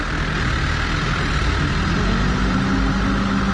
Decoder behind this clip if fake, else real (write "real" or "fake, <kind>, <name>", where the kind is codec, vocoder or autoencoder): real